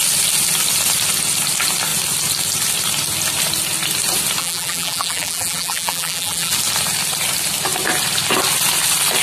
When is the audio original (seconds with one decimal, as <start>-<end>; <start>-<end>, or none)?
0.0-4.4; 6.5-9.2